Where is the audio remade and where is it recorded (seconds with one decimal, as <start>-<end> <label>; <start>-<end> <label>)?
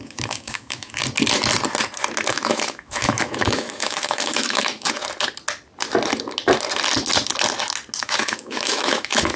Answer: 0.0-1.0 remade; 1.0-2.3 recorded; 2.3-5.0 remade; 5.0-8.0 recorded; 8.0-9.4 remade